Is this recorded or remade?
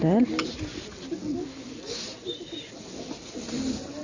recorded